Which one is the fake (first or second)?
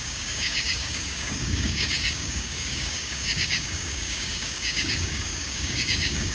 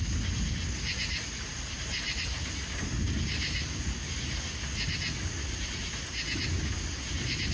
first